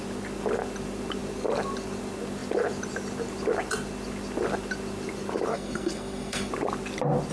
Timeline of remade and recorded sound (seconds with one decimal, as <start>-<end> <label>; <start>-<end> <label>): 0.0-5.5 recorded; 5.5-6.5 remade; 6.5-7.3 recorded